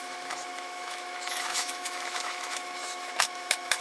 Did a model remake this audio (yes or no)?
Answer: yes